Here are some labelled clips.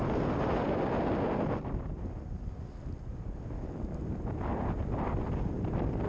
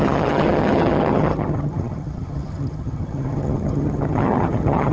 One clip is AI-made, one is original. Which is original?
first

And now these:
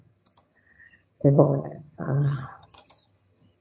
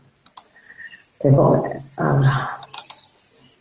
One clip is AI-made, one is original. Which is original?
second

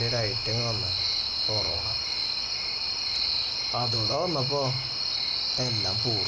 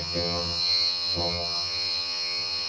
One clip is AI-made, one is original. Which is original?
first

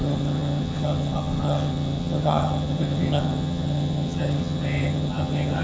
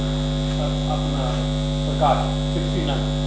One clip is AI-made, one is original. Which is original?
second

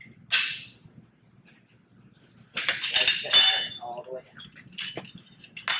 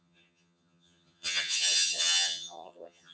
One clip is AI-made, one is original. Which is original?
first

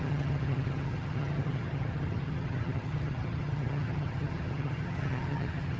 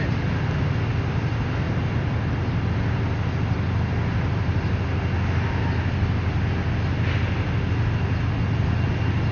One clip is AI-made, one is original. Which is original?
second